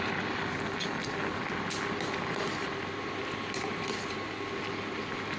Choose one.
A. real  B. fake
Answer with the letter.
A